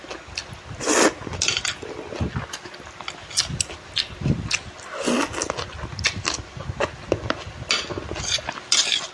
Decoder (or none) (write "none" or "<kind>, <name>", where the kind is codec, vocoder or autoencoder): none